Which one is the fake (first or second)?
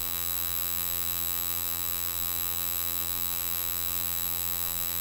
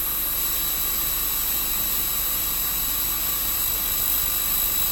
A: first